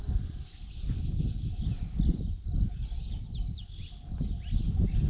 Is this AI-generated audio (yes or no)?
no